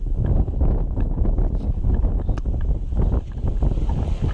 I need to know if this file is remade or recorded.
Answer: recorded